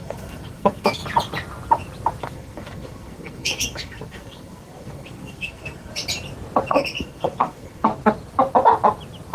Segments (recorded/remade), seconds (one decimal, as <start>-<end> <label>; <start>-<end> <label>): 0.0-1.0 remade; 1.0-2.2 recorded; 2.2-5.9 remade; 5.9-6.7 recorded; 6.7-7.9 remade; 7.9-9.3 recorded